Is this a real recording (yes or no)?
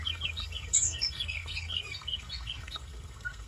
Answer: no